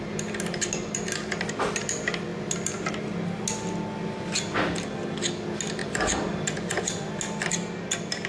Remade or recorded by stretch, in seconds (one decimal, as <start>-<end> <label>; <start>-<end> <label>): 0.0-8.3 recorded